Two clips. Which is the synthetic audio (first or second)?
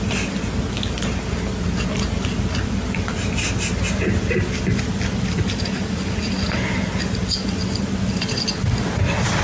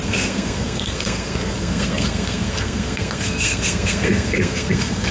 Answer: second